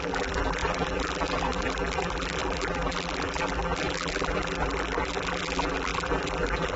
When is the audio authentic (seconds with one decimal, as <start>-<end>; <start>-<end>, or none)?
none